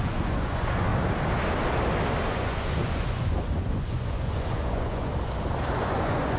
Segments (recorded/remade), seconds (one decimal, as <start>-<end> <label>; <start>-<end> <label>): 0.0-0.9 remade; 0.9-2.3 recorded; 2.3-5.1 remade; 5.1-5.7 recorded; 5.7-6.4 remade